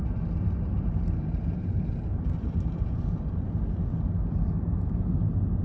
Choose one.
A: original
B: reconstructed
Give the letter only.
B